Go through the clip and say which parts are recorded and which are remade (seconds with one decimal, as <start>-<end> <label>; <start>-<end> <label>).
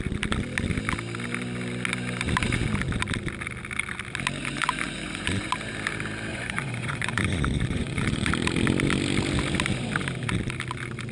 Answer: 0.0-4.4 recorded; 4.4-5.5 remade; 5.5-6.3 recorded; 6.3-8.3 remade; 8.3-11.1 recorded